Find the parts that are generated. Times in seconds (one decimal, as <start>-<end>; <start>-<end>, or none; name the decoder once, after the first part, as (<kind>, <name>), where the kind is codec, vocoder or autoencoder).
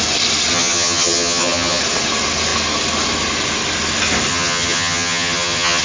0.5-1.8 (vocoder, HiFi-GAN); 4.3-5.8